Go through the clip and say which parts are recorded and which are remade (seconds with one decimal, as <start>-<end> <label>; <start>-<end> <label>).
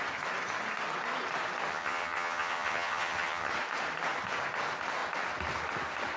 0.0-1.7 recorded; 1.7-3.5 remade; 3.5-6.2 recorded